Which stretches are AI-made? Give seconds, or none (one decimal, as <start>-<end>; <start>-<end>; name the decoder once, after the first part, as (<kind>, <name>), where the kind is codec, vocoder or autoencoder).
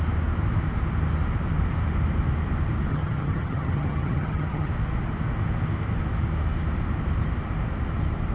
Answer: 2.9-4.7 (vocoder, HiFi-GAN)